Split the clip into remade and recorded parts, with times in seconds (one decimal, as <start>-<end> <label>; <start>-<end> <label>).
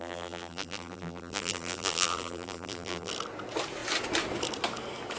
0.0-3.1 remade; 3.1-5.2 recorded